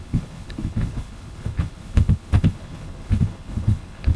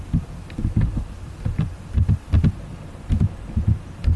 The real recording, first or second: second